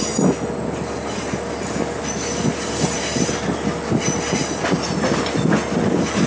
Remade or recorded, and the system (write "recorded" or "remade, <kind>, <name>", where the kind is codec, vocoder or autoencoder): recorded